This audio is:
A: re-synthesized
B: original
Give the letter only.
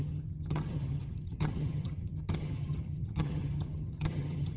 A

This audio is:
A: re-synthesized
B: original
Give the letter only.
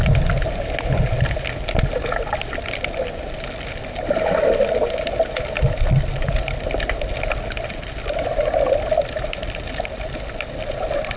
B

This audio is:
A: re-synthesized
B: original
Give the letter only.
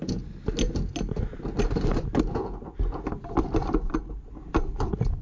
B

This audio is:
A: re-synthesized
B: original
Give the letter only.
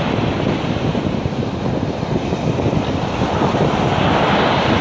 B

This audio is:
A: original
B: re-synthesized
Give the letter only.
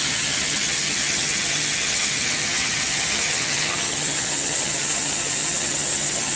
B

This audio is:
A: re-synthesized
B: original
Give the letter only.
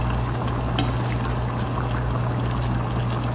B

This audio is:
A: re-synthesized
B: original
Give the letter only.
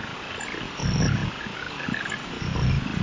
B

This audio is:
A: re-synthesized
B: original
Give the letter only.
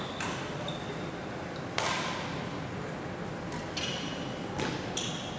B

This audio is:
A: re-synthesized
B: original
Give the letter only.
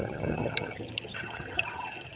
A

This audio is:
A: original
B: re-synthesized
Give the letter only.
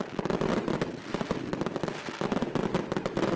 A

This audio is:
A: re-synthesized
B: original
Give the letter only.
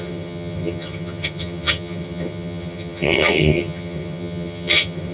A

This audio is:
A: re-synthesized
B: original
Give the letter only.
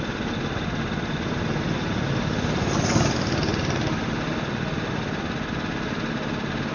B